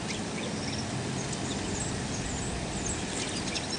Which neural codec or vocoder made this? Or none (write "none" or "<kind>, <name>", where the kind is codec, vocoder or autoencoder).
none